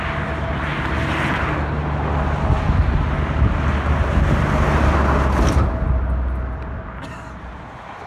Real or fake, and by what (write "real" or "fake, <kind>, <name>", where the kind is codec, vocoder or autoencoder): real